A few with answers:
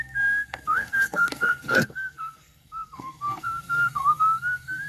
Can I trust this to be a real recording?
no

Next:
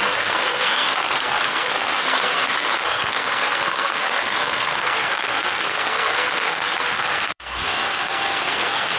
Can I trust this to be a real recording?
no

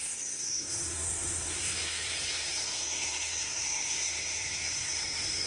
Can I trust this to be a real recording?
no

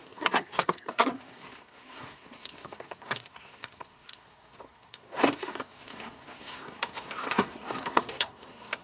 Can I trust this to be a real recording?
no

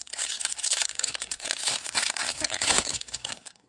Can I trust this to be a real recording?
no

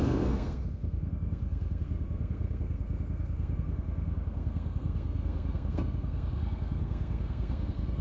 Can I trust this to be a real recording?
no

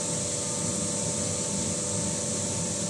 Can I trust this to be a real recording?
yes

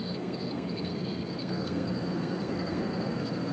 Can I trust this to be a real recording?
no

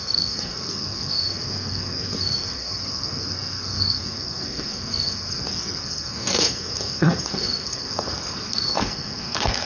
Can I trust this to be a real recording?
no